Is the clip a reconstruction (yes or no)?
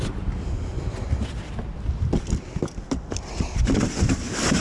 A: no